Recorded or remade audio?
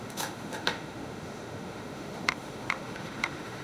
remade